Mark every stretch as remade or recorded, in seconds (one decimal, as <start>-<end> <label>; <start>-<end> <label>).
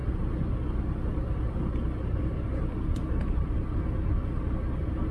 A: 0.0-5.1 recorded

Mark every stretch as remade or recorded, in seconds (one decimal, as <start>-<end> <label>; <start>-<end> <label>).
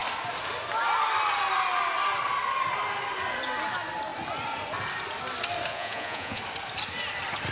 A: 0.0-5.7 recorded; 5.7-6.4 remade; 6.4-7.5 recorded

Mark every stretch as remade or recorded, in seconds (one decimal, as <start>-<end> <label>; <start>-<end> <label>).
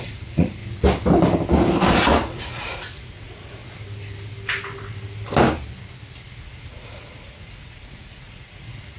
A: 0.0-0.6 remade; 0.6-2.1 recorded; 2.1-3.6 remade; 3.6-6.4 recorded; 6.4-9.0 remade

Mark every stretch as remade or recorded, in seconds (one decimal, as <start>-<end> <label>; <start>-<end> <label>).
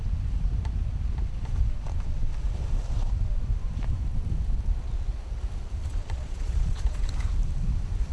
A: 0.0-5.9 recorded; 5.9-7.1 remade; 7.1-8.1 recorded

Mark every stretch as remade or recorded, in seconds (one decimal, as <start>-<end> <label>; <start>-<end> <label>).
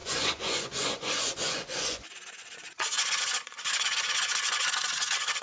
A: 0.0-5.4 remade